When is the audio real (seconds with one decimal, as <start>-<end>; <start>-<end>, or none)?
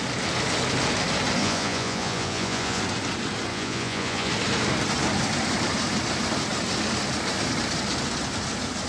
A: 0.0-1.4; 2.8-3.5; 4.3-8.9